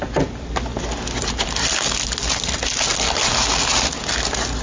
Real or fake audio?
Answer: real